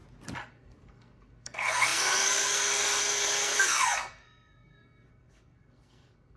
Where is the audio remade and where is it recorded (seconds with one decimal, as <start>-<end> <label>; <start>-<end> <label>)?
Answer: 0.0-0.5 recorded; 0.5-6.4 remade